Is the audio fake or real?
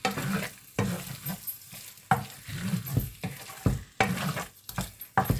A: real